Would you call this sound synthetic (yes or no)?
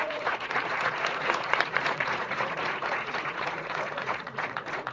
yes